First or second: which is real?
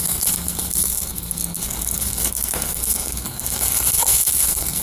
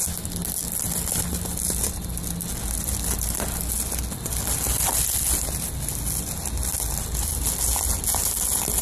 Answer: second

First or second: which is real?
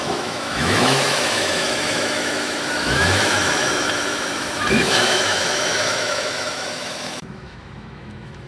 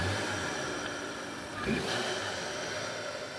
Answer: second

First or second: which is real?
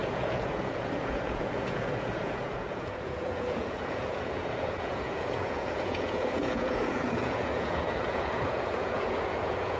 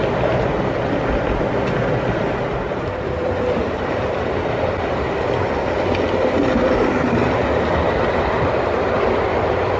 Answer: second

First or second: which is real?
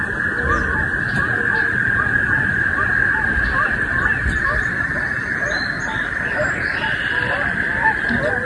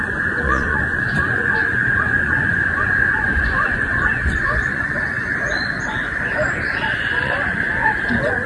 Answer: first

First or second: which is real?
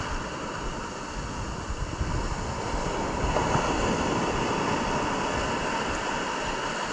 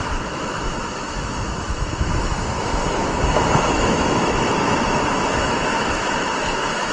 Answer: first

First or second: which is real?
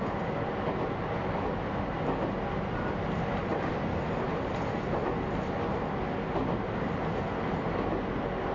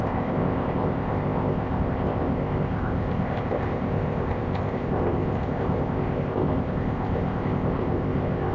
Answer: first